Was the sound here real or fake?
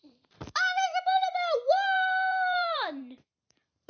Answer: fake